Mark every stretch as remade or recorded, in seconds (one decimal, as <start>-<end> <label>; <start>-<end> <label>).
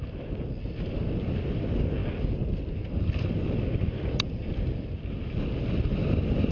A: 0.0-6.5 recorded